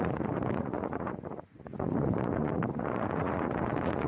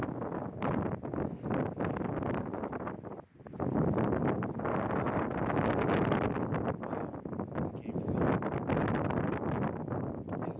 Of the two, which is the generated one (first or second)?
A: first